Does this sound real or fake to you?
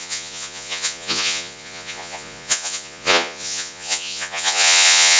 fake